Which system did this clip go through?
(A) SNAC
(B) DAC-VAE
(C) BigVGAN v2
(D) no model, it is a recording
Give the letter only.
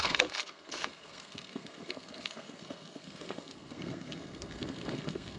A